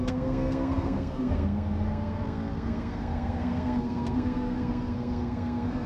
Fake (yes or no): yes